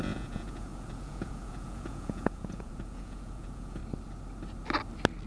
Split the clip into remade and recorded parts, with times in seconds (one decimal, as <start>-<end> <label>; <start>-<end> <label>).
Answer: 0.0-3.8 remade; 3.8-5.3 recorded